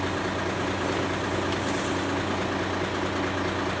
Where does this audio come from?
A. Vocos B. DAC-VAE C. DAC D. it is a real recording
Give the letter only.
D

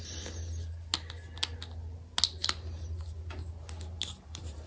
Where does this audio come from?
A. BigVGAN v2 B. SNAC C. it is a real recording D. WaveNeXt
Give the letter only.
C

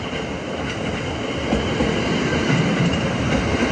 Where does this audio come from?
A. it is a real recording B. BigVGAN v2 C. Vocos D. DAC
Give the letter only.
A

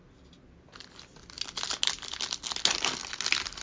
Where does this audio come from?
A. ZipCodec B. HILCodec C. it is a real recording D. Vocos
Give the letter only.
C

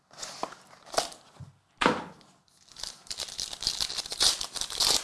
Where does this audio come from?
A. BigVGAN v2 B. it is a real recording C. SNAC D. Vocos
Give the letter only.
B